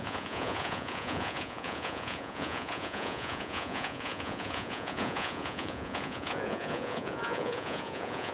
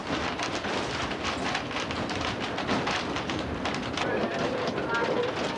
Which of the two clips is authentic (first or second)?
second